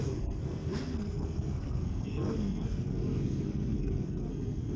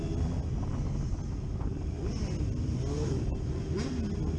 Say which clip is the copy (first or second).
first